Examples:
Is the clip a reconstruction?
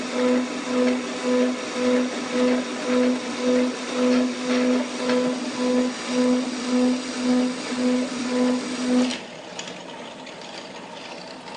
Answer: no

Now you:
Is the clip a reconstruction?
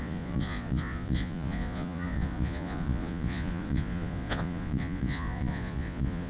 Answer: yes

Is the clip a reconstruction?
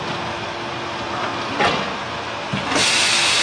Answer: no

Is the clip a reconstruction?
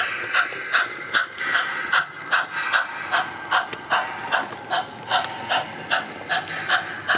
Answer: no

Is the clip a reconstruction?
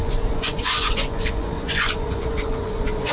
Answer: yes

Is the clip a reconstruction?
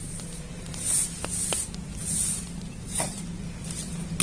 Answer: no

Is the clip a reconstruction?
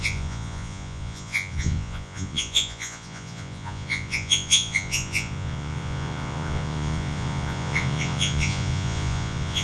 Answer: yes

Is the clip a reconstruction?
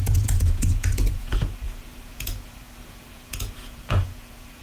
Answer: yes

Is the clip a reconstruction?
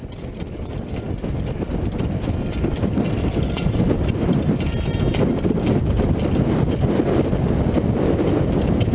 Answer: no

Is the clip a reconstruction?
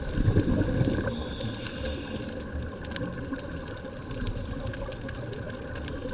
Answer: no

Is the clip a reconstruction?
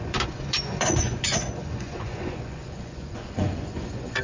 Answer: yes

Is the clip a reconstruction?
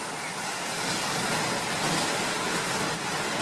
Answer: no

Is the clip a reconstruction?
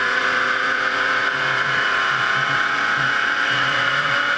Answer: yes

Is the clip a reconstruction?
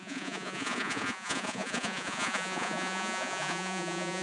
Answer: yes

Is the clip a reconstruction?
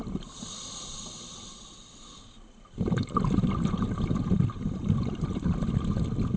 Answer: no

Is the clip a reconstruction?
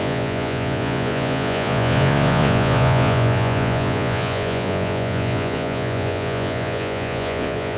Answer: yes